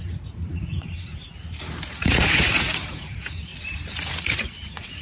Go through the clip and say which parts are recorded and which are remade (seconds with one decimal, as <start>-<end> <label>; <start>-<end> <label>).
0.0-1.1 remade; 1.1-1.9 recorded; 1.9-3.5 remade; 3.5-4.2 recorded; 4.2-5.0 remade